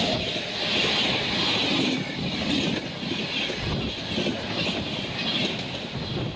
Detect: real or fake real